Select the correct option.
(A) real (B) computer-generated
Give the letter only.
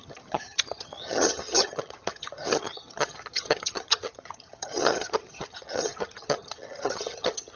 B